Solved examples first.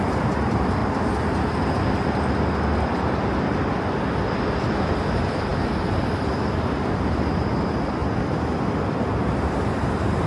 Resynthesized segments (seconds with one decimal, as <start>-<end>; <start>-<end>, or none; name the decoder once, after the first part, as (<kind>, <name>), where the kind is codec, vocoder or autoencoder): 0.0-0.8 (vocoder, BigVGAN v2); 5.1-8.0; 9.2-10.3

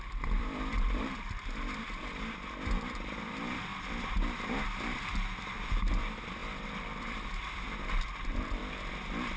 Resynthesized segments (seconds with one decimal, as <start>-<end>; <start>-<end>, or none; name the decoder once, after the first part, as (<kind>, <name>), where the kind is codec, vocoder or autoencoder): 0.0-8.6 (vocoder, BigVGAN v2)

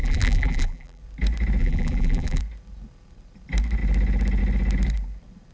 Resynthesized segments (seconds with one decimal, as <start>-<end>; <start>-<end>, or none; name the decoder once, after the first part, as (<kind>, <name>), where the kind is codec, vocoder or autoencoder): 0.0-1.0 (vocoder, BigVGAN v2); 1.6-2.4